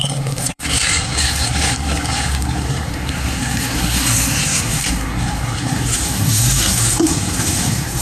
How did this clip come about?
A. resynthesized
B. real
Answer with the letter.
A